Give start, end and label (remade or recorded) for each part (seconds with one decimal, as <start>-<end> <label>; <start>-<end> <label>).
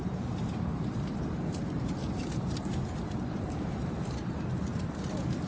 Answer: 0.0-5.5 recorded